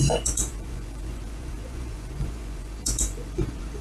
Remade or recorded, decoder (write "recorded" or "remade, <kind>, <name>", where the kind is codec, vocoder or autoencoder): remade, vocoder, Vocos